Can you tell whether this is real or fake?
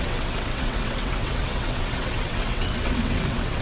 fake